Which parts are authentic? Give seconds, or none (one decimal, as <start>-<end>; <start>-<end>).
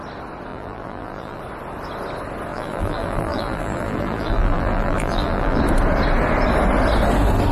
0.0-0.5; 1.4-2.5; 5.6-7.5